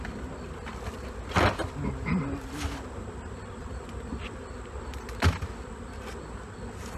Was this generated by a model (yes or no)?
no